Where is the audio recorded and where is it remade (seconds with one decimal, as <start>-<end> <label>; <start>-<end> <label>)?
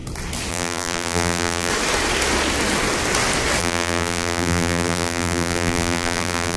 0.0-0.5 recorded; 0.5-1.7 remade; 1.7-3.6 recorded; 3.6-6.6 remade